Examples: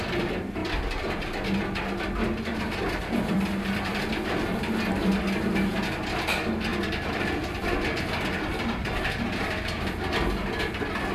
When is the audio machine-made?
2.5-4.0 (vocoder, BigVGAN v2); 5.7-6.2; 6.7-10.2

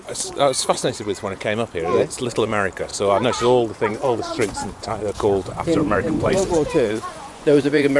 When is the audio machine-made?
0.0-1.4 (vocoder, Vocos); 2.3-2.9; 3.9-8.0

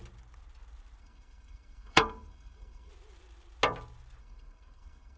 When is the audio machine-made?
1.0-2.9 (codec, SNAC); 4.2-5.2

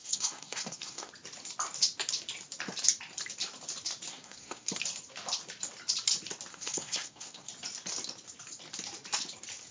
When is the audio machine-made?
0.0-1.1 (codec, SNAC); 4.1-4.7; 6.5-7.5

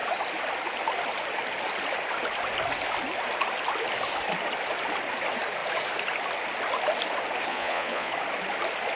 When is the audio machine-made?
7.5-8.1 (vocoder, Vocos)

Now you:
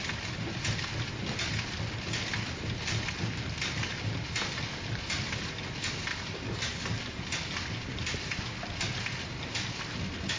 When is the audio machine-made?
6.1-7.2 (codec, DAC)

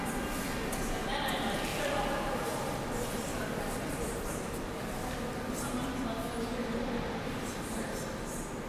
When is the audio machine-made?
1.7-2.4 (vocoder, BigVGAN v2); 3.3-5.0